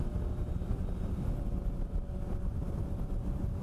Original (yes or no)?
yes